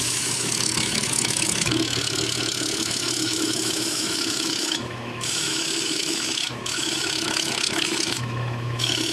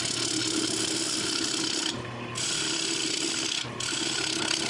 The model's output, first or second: first